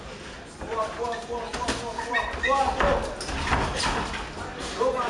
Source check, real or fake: real